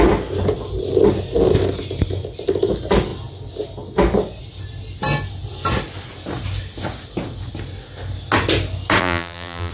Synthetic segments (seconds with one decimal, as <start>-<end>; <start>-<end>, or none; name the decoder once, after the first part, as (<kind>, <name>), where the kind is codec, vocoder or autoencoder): 9.0-9.7 (vocoder, BigVGAN v2)